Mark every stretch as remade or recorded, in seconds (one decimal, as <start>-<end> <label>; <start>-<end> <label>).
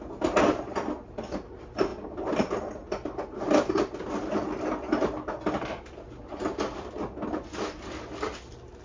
0.0-8.8 recorded